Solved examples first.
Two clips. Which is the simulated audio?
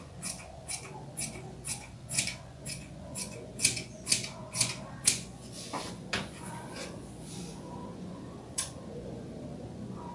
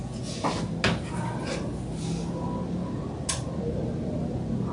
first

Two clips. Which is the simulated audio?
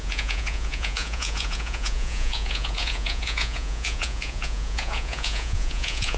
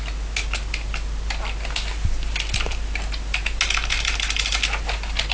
first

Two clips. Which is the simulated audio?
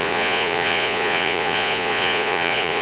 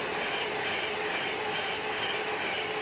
first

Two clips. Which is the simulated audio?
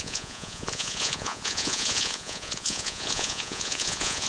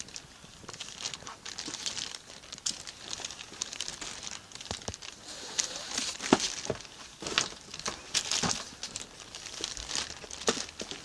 first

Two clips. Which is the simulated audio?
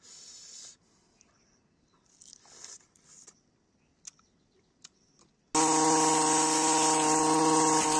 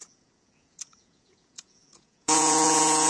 second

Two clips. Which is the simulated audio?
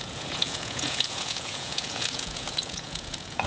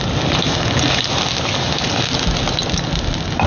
first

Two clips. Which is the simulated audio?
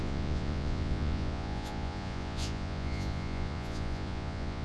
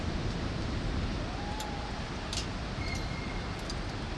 first